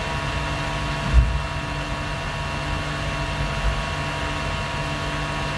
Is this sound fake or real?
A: real